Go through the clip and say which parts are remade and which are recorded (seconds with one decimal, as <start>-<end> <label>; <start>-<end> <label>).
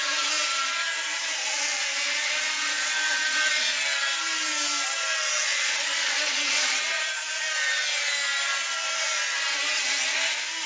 0.0-2.2 recorded; 2.2-3.5 remade; 3.5-5.5 recorded; 5.5-6.7 remade; 6.7-10.7 recorded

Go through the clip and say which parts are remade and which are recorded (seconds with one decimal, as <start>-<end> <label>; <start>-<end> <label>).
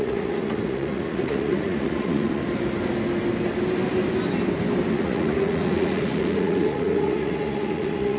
0.0-2.4 remade; 2.4-4.9 recorded; 4.9-8.2 remade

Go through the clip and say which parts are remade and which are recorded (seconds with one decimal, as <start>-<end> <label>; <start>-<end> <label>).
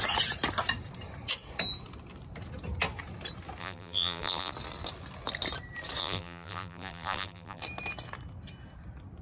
0.0-3.6 recorded; 3.6-4.5 remade; 4.5-6.0 recorded; 6.0-7.6 remade; 7.6-9.2 recorded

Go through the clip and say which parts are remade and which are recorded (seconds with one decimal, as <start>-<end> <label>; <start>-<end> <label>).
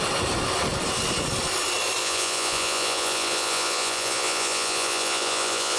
0.0-2.0 recorded; 2.0-5.8 remade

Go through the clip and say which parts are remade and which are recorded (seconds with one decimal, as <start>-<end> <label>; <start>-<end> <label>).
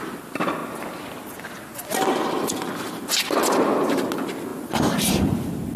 0.0-5.8 recorded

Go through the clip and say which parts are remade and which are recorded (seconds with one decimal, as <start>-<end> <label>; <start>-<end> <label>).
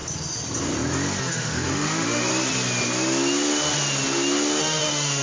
0.0-1.2 recorded; 1.2-2.3 remade; 2.3-4.6 recorded; 4.6-5.2 remade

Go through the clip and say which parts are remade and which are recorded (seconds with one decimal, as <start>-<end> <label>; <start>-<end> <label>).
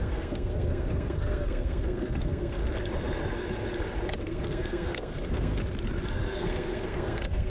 0.0-2.6 remade; 2.6-4.2 recorded; 4.2-5.6 remade; 5.6-6.1 recorded; 6.1-7.5 remade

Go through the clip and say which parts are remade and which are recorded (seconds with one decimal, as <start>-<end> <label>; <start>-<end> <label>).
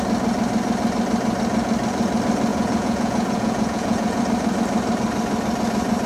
0.0-2.5 recorded; 2.5-4.2 remade; 4.2-6.1 recorded